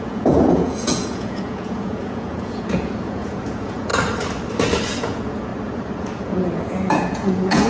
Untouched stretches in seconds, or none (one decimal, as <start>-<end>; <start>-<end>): 3.9-5.0; 5.5-6.0

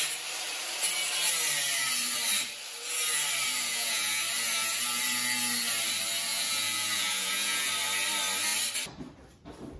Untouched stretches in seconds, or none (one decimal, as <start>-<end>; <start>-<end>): 0.0-3.7; 4.2-6.3; 7.7-9.8

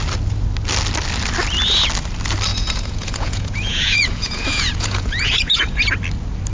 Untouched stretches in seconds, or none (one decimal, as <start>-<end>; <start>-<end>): 0.0-2.5; 5.8-6.5

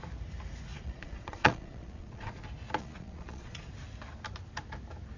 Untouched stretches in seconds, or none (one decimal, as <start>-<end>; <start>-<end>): 0.0-0.7; 2.4-2.8; 3.7-5.2

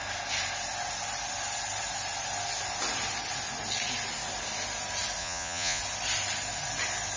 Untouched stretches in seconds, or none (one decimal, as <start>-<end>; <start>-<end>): 0.0-5.2; 5.8-7.2

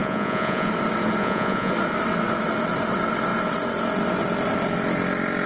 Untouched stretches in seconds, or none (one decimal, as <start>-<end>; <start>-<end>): 0.7-1.2; 1.7-5.5

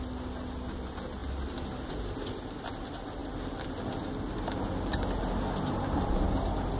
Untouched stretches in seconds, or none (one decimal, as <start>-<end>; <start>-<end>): 0.0-6.8

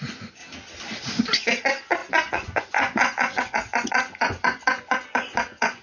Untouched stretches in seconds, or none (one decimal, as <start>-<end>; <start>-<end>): 0.4-1.2